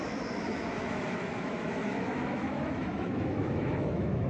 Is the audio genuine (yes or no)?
no